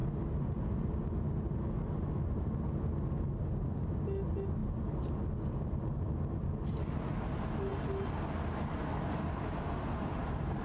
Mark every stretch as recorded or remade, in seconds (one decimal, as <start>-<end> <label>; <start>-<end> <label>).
0.0-10.6 recorded